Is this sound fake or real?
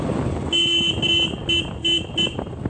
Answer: real